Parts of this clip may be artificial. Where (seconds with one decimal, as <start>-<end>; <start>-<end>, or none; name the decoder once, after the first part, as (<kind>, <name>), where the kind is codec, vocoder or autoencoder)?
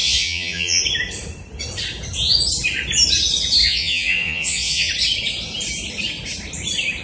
0.0-0.8 (vocoder, Vocos); 3.6-4.9